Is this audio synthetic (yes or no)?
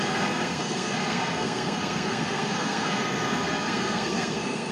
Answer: yes